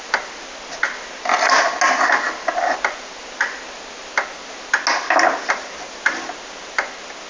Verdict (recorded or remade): recorded